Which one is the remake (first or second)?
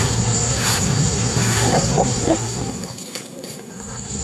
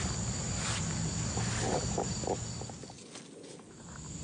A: first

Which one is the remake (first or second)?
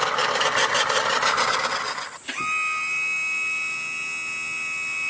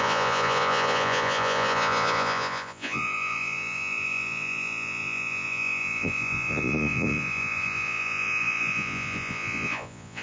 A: second